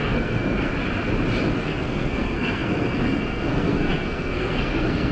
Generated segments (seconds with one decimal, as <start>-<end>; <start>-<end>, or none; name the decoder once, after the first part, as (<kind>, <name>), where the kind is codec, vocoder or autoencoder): 0.0-0.7 (codec, SNAC); 1.6-5.1